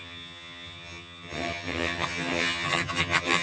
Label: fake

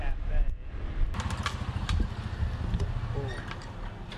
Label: real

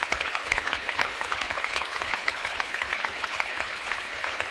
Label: fake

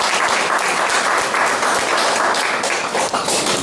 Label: real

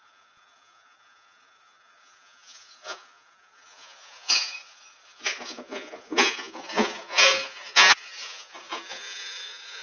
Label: fake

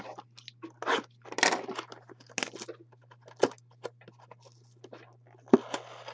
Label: real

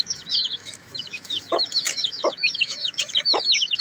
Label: fake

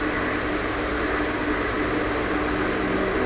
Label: real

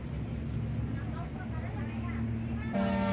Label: real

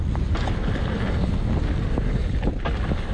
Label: real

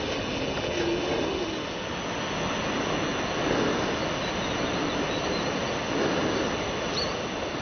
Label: real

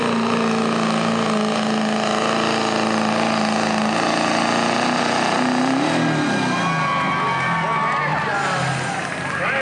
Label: real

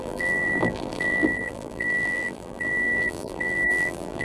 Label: fake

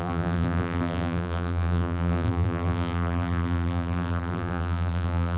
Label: fake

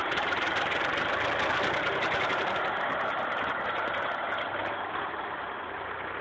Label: real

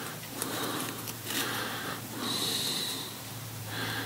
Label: fake